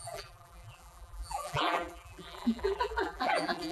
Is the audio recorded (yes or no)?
no